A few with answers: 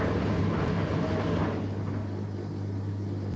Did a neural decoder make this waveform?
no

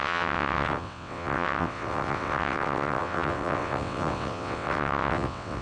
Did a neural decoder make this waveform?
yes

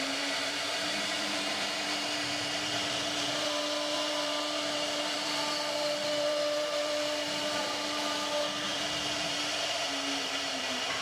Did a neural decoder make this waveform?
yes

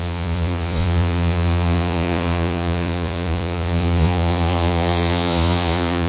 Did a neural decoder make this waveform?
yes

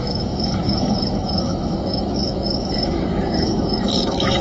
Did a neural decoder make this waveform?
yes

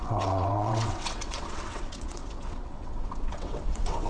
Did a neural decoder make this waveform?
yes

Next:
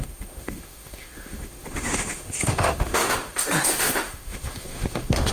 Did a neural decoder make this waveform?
yes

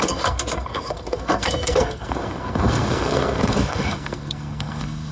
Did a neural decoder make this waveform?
yes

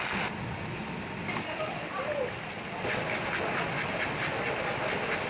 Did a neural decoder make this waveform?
no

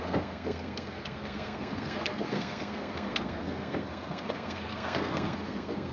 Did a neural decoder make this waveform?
yes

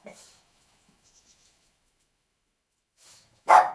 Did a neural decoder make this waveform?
yes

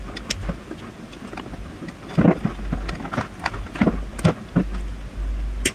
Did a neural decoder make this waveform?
no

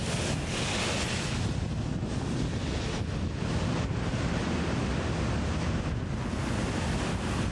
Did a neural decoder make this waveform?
no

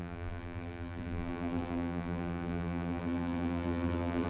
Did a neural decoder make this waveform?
yes